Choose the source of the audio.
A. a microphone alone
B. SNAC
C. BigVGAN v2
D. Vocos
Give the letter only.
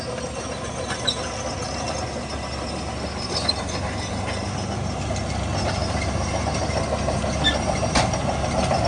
A